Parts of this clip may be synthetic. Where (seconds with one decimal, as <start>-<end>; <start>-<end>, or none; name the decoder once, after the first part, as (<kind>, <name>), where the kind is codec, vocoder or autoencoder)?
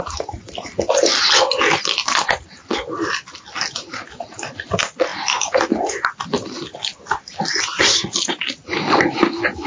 none